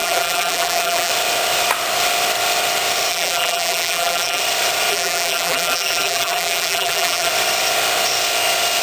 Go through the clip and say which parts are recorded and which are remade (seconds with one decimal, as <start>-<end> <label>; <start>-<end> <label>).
0.0-1.1 remade; 1.1-3.1 recorded; 3.1-4.4 remade; 4.4-4.9 recorded; 4.9-7.3 remade; 7.3-8.8 recorded